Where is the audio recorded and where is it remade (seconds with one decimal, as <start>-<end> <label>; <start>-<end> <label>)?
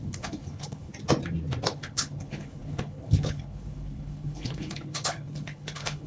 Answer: 0.0-0.9 remade; 0.9-1.7 recorded; 1.7-6.1 remade